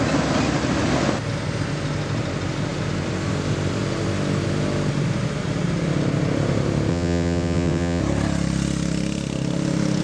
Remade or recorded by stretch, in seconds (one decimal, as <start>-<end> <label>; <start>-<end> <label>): 0.0-6.9 recorded; 6.9-8.0 remade; 8.0-10.0 recorded